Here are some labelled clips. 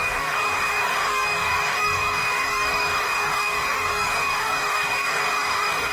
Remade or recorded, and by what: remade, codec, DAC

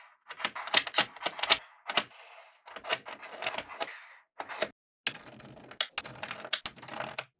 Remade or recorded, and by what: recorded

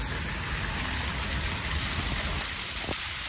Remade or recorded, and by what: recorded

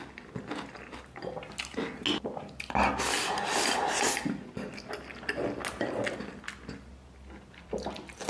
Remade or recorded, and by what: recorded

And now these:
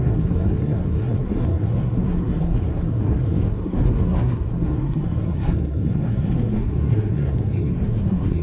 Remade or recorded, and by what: remade, codec, SNAC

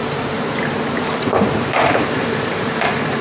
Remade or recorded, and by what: remade, vocoder, BigVGAN v2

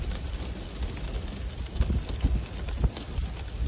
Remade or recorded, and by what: recorded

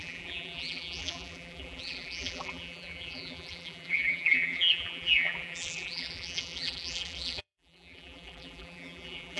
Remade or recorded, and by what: remade, vocoder, BigVGAN v2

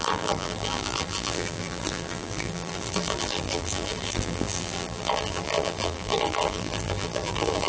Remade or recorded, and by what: remade, vocoder, BigVGAN v2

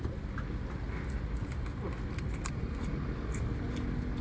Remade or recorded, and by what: recorded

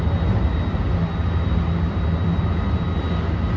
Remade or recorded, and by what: recorded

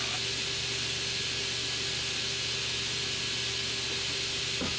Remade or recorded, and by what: recorded